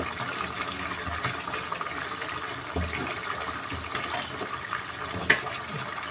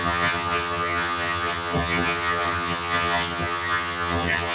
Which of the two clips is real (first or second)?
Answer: first